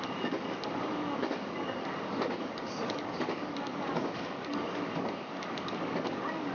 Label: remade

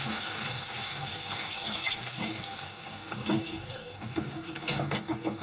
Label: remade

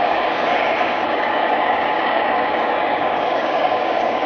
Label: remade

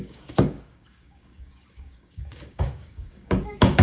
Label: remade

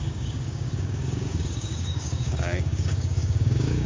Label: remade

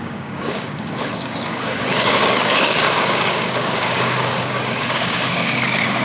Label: remade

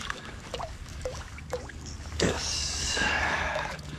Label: remade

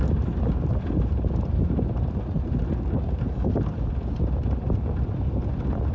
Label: recorded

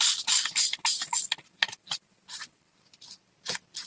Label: recorded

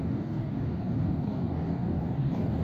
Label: remade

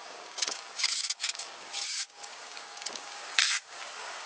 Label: remade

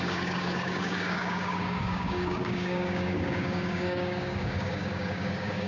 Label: remade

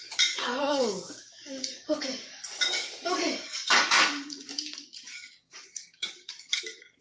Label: remade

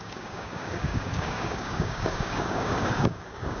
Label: remade